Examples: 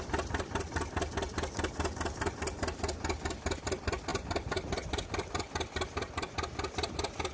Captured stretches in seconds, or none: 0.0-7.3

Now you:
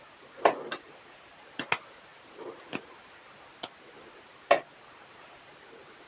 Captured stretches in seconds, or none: 0.0-6.1

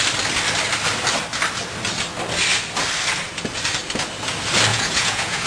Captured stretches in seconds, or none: 0.0-4.7

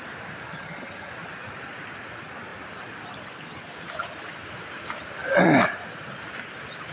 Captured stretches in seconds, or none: 0.0-0.5; 1.1-6.9